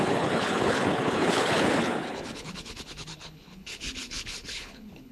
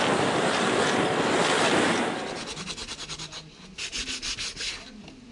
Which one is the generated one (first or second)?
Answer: first